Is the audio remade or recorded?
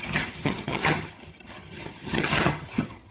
remade